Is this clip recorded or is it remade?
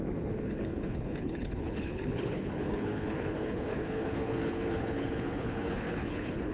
remade